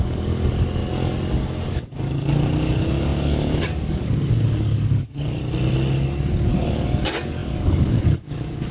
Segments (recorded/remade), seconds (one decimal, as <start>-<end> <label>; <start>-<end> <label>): 0.0-0.8 remade; 0.8-1.7 recorded; 1.7-5.4 remade; 5.4-6.3 recorded; 6.3-8.7 remade